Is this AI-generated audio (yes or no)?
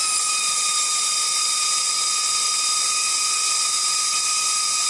yes